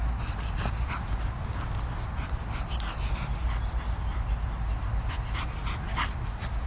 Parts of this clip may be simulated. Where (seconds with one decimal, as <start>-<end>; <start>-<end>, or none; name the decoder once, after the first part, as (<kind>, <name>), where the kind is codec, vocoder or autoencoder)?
none